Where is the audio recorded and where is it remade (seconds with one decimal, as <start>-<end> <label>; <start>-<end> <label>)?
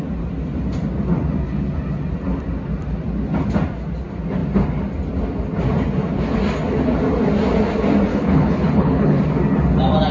0.0-8.1 recorded; 8.1-9.2 remade; 9.2-10.1 recorded